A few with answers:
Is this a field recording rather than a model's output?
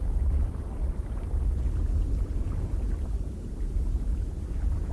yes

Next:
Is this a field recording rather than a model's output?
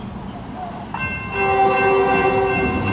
yes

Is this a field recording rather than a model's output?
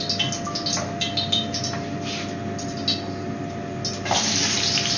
yes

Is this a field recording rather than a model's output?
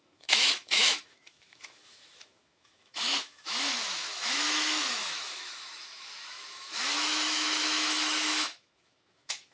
no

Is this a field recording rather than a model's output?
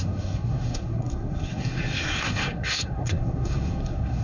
no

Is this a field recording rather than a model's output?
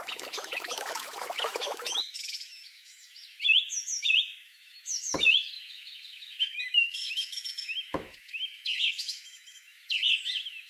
no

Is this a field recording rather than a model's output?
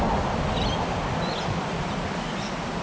yes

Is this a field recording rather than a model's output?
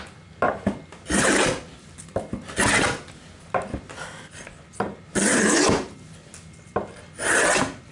yes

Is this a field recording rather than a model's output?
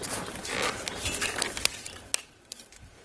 yes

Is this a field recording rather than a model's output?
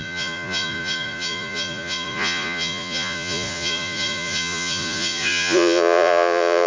no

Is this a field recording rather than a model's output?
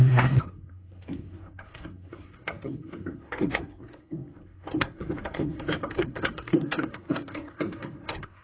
no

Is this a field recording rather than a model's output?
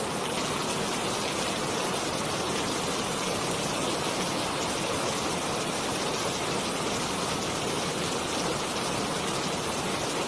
yes